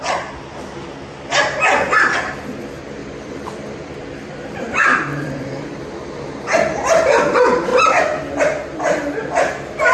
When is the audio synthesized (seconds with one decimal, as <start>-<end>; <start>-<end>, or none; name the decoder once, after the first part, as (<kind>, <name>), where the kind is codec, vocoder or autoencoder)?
3.0-4.3 (vocoder, BigVGAN v2); 4.9-5.8